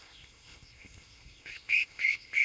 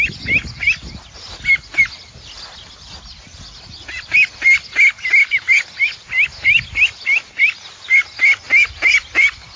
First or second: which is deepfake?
first